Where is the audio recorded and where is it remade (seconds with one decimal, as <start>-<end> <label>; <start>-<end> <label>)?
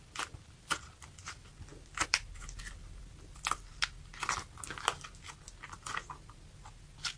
0.0-1.7 recorded; 1.7-3.0 remade; 3.0-7.2 recorded